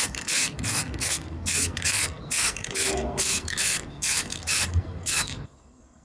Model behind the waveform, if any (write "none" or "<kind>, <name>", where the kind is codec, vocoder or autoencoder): codec, SNAC